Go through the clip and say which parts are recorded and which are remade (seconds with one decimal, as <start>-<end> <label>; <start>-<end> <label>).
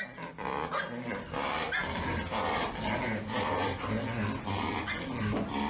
0.0-5.7 recorded